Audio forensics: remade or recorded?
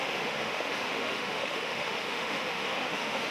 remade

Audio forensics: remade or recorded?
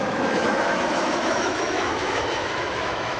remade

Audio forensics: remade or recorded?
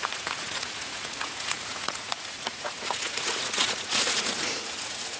remade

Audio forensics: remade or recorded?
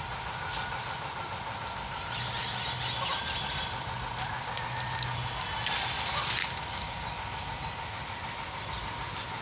recorded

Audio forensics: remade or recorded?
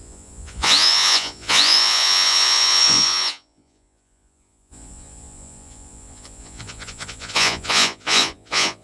remade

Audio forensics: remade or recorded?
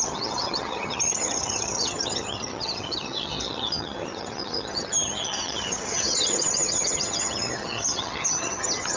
remade